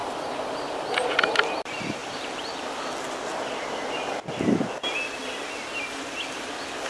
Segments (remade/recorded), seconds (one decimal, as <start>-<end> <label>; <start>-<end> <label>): 0.0-6.9 recorded